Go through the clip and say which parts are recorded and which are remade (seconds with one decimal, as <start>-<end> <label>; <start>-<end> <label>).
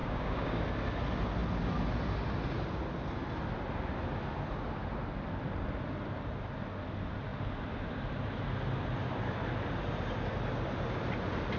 0.0-0.6 remade; 0.6-11.6 recorded